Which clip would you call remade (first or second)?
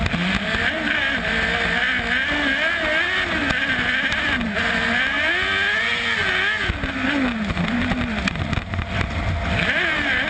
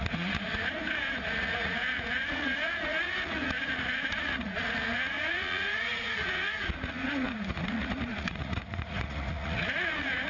second